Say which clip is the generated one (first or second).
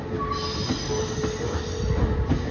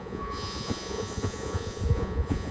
second